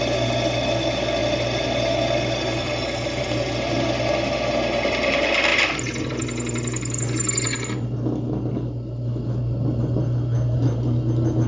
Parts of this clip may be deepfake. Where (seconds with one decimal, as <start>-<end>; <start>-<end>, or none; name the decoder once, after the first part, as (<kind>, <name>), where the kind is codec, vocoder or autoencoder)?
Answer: none